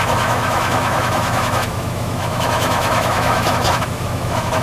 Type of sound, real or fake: fake